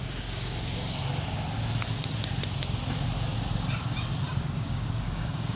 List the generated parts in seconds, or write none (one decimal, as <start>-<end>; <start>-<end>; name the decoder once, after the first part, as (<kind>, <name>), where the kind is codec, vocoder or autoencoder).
0.0-1.0 (codec, DAC); 4.4-5.6